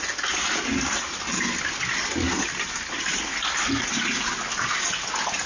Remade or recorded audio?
recorded